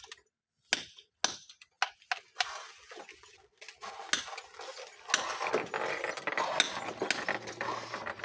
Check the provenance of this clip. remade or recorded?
recorded